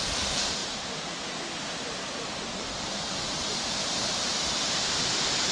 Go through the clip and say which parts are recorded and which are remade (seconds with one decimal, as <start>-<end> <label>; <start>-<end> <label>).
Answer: 0.0-0.6 remade; 0.6-3.9 recorded; 3.9-5.5 remade